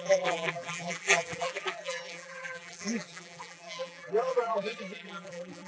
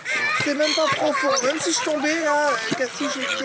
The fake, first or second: first